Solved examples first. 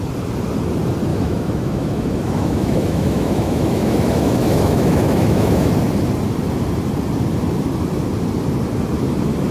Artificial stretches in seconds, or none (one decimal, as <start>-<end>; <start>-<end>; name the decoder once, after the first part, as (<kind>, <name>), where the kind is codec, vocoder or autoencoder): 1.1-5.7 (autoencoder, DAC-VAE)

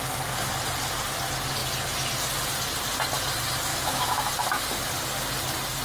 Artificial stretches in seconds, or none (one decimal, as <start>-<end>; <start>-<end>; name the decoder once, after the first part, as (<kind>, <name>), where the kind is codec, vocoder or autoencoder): 3.7-4.3 (autoencoder, DAC-VAE)

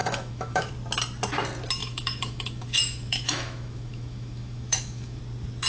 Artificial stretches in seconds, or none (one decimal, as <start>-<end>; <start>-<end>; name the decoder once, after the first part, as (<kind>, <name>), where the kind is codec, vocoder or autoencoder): 0.0-0.7 (autoencoder, DAC-VAE); 1.8-5.2